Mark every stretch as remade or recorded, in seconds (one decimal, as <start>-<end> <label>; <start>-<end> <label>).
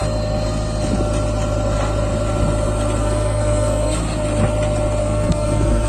0.0-3.0 recorded; 3.0-4.0 remade; 4.0-5.0 recorded; 5.0-5.9 remade